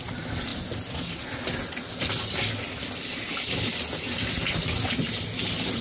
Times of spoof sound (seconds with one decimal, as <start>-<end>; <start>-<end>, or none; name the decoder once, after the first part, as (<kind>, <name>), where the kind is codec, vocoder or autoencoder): none